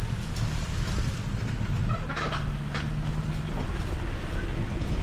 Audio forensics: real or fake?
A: real